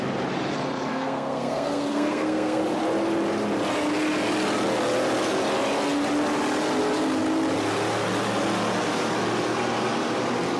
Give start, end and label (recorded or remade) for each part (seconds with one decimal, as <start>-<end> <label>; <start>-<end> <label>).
0.0-0.9 recorded; 0.9-2.6 remade; 2.6-10.6 recorded